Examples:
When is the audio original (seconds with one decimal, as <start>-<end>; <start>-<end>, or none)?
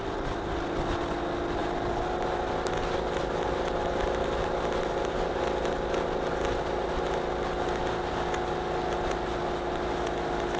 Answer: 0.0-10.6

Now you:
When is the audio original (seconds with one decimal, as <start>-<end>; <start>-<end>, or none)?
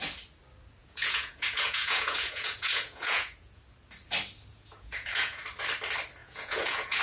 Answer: 0.0-0.8; 3.6-4.5; 5.4-6.2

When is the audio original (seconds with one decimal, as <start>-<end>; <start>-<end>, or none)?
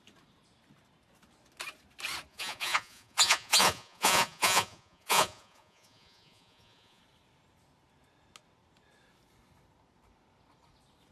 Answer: 0.0-2.3; 7.0-11.1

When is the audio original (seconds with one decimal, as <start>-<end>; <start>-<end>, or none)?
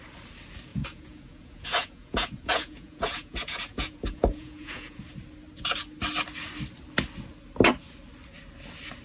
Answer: 0.0-0.7; 5.0-9.0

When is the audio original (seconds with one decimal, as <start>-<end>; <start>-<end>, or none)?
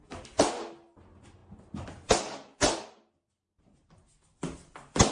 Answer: 0.0-5.1